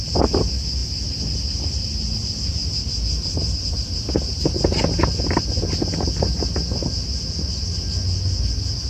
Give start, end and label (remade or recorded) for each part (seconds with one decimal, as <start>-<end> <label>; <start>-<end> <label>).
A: 0.0-8.9 recorded